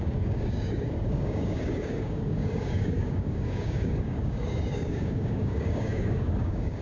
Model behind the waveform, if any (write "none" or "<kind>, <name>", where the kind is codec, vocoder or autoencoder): codec, DAC